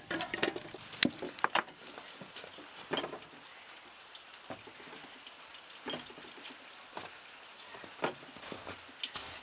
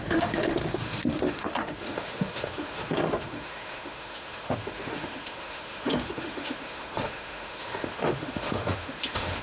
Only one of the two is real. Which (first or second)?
first